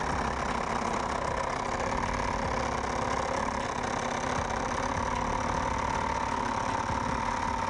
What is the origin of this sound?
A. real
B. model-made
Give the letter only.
A